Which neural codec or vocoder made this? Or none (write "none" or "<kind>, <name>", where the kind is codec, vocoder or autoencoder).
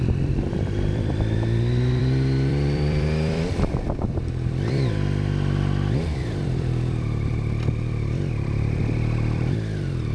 vocoder, BigVGAN v2